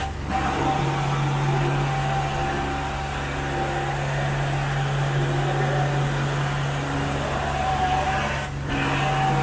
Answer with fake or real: real